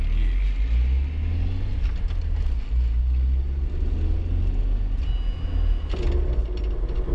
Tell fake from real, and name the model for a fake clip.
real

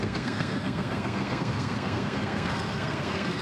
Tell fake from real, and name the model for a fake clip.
fake, codec, SNAC